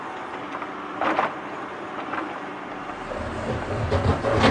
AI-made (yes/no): no